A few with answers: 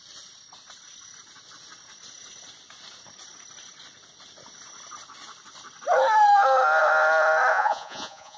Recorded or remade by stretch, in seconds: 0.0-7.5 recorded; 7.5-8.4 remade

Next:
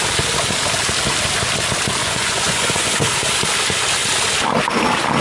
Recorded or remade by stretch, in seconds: 0.0-2.0 recorded; 2.0-3.3 remade; 3.3-5.2 recorded